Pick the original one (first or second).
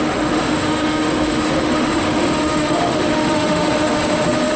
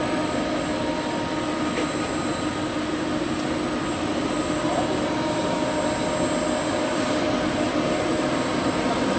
second